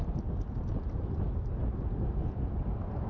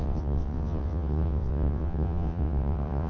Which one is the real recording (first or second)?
first